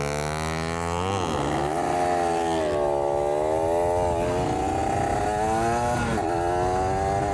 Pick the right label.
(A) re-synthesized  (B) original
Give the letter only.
B